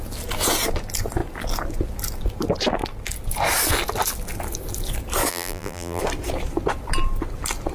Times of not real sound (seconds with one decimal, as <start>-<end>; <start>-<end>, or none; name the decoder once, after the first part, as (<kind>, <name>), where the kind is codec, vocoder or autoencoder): 5.3-6.0 (vocoder, BigVGAN v2)